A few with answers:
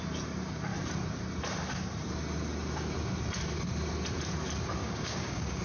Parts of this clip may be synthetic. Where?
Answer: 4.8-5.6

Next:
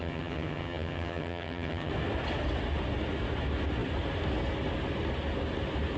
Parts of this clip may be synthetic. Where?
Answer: 0.0-1.9

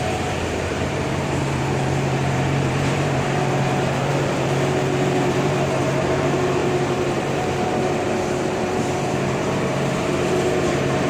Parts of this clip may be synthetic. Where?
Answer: 0.0-11.1

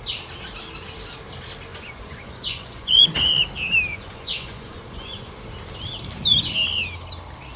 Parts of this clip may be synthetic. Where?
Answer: 1.7-3.1; 3.9-5.3

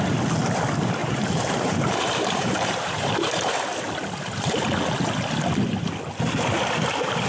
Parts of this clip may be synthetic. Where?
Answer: 1.0-3.5